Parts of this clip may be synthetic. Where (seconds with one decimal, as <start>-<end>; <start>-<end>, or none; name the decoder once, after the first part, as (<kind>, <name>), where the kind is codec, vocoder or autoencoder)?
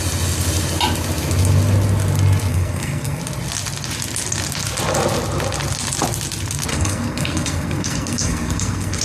2.5-3.2 (codec, SNAC); 6.7-9.0